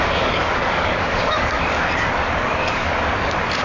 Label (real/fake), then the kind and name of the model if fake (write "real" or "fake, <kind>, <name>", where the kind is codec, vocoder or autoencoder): fake, codec, DAC